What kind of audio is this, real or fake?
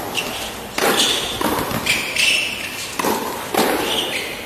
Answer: real